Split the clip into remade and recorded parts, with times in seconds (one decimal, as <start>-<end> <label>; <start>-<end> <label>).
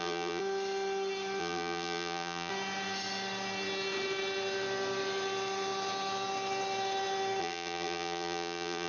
0.0-0.4 remade; 0.4-1.4 recorded; 1.4-2.5 remade; 2.5-7.4 recorded; 7.4-8.9 remade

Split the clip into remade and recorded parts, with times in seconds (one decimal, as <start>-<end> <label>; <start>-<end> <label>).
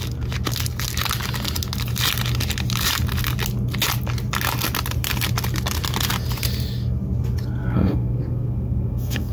0.0-7.6 recorded; 7.6-9.3 remade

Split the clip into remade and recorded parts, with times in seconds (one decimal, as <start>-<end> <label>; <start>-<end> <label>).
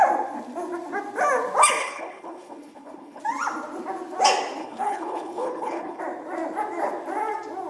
0.0-1.8 recorded; 1.8-3.2 remade; 3.2-4.6 recorded; 4.6-6.0 remade; 6.0-7.7 recorded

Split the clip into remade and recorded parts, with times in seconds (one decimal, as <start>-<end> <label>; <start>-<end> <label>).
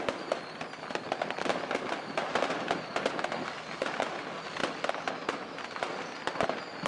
0.0-4.6 recorded; 4.6-5.1 remade; 5.1-6.9 recorded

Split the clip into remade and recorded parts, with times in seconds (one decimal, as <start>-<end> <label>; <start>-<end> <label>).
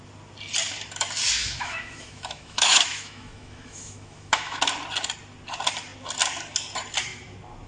0.0-1.4 recorded; 1.4-4.6 remade; 4.6-7.7 recorded